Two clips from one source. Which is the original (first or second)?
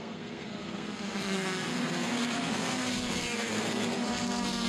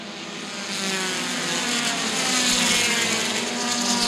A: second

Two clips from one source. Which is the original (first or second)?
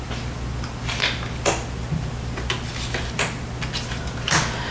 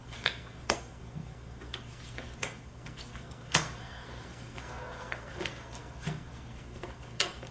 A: first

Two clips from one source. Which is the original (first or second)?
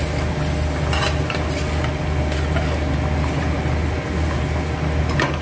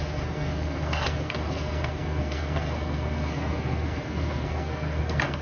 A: first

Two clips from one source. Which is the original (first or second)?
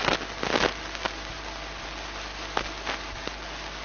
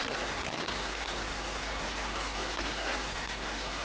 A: first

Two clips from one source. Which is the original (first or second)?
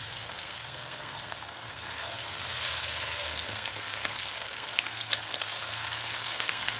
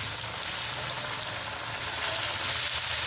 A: second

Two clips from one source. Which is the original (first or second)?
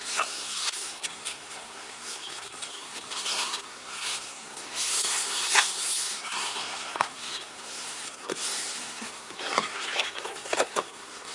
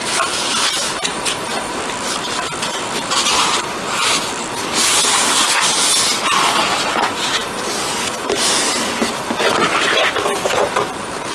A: second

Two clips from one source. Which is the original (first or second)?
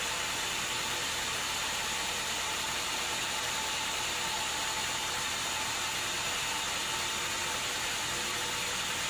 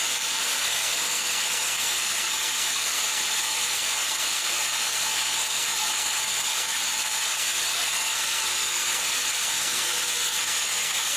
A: first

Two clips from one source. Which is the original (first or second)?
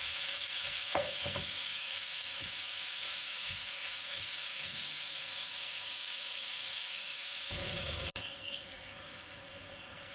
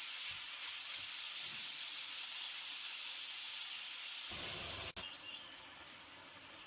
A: second